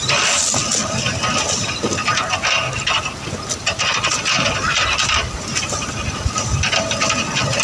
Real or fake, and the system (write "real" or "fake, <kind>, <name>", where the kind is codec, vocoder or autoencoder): real